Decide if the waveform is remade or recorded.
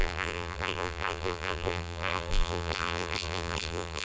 remade